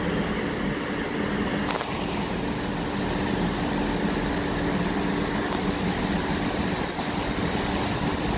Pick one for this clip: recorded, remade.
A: recorded